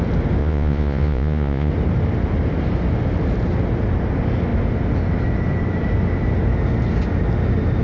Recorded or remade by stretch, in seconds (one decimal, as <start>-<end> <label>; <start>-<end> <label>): 0.0-0.4 recorded; 0.4-1.7 remade; 1.7-7.8 recorded